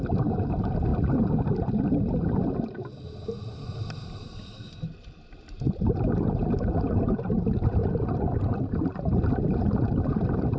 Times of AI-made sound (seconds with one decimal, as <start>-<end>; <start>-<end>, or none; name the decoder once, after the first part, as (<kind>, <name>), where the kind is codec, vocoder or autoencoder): 0.0-0.9 (vocoder, BigVGAN v2); 5.4-7.8; 8.6-10.6